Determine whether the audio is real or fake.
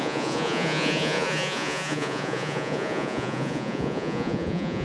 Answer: fake